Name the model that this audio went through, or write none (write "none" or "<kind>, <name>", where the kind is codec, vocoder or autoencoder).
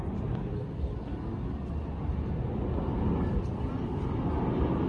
none